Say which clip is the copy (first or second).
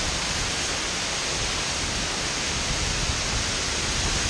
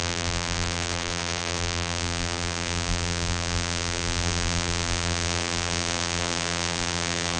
second